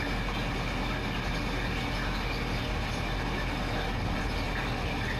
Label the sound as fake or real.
real